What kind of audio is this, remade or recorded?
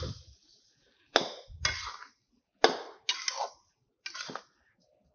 recorded